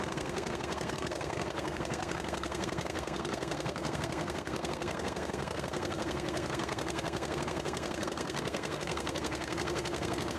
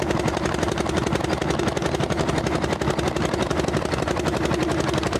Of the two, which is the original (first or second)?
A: second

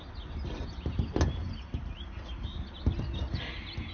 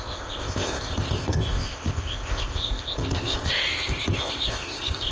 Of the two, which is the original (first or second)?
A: first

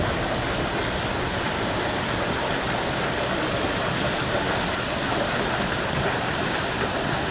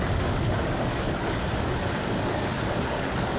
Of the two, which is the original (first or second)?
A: first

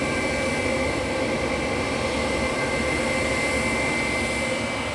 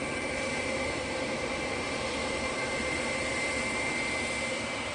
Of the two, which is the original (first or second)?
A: first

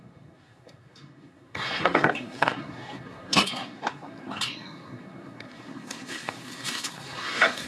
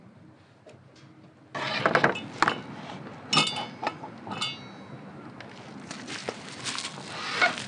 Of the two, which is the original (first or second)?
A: second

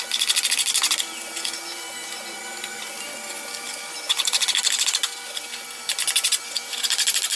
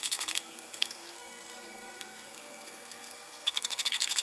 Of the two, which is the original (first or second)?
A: first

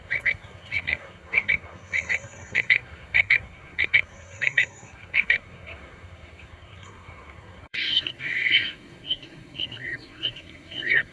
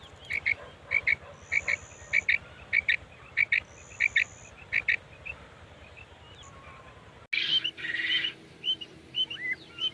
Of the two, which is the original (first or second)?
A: second